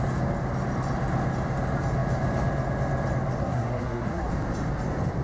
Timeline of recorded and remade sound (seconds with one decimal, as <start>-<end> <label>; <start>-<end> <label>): 0.0-3.4 recorded; 3.4-4.3 remade; 4.3-5.2 recorded